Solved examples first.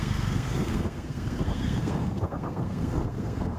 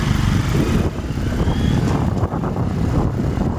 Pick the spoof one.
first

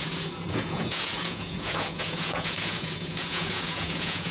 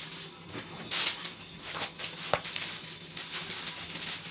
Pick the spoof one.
first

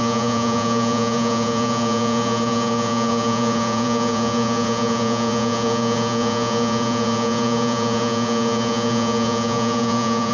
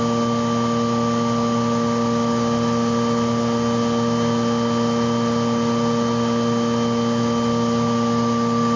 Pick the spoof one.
first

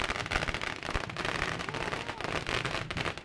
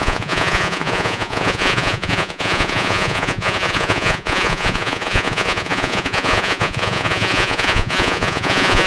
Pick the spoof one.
second